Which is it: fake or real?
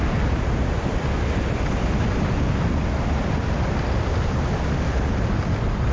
real